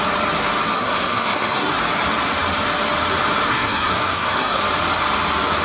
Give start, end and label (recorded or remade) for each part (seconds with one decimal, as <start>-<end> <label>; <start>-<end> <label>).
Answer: 0.0-0.7 recorded; 0.7-1.7 remade; 1.7-3.5 recorded; 3.5-4.6 remade; 4.6-5.6 recorded